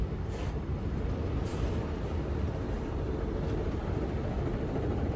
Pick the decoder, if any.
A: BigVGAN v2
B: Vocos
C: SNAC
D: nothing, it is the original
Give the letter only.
A